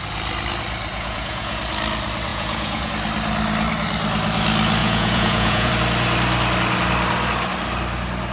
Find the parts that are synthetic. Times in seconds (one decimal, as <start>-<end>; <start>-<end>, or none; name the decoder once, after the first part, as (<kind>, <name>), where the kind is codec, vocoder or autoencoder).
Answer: 0.9-1.6 (vocoder, Vocos); 2.3-2.9; 4.8-5.7